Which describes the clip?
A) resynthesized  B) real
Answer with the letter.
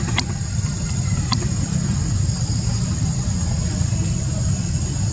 B